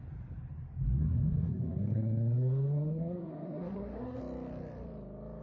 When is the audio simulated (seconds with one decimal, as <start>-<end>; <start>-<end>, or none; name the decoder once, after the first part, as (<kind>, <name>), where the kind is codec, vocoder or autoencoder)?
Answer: 1.0-4.2 (codec, SNAC)